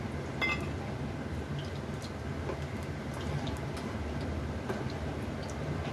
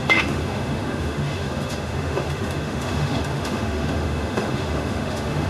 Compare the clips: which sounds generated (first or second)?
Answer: second